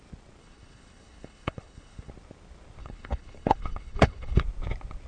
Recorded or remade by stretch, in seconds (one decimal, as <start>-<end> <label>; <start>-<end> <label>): 0.0-0.4 recorded; 0.4-2.1 remade; 2.1-2.8 recorded; 2.8-4.4 remade; 4.4-5.1 recorded